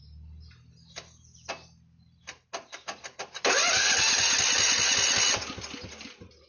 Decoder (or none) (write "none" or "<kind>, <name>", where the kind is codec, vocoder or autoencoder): none